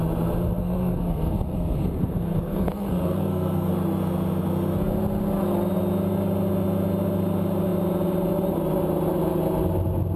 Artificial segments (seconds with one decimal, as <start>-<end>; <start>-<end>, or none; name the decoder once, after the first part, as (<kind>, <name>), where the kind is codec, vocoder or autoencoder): 0.6-3.7 (codec, SNAC)